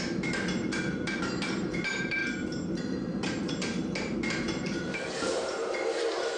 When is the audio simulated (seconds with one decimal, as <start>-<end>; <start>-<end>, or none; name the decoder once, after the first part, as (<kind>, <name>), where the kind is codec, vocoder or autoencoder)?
0.0-2.2 (vocoder, BigVGAN v2); 2.8-6.4